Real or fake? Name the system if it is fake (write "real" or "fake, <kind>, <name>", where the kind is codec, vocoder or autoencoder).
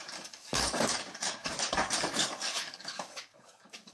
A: fake, codec, DAC